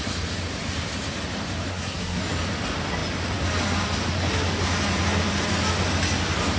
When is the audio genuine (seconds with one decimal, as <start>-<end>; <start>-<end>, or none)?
0.0-1.7; 2.2-6.6